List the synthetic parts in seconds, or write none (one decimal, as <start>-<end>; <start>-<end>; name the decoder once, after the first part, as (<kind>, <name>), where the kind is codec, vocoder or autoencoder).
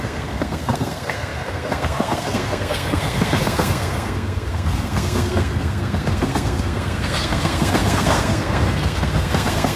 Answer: 0.0-9.8 (codec, SNAC)